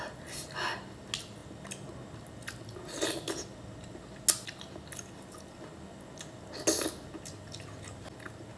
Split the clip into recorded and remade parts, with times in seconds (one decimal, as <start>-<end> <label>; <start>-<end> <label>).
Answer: 0.0-8.6 recorded